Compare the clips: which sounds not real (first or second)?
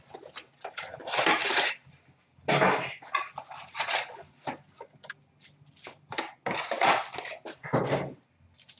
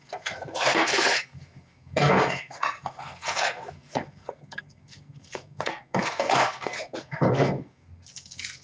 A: second